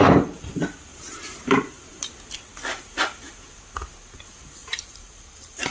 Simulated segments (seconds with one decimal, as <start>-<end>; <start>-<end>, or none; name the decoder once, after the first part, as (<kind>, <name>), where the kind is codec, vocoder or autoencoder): 0.9-2.1 (vocoder, BigVGAN v2); 4.6-5.7